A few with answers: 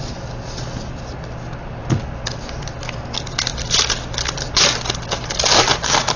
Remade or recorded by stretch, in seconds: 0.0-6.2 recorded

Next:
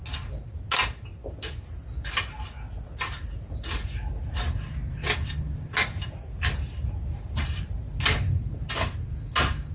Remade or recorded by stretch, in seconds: 0.0-9.7 recorded

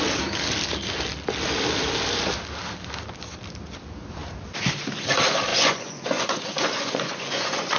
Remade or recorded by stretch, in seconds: 0.0-5.5 recorded; 5.5-7.8 remade